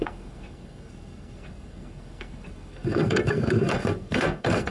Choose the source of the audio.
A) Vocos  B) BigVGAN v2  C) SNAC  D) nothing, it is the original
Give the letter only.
C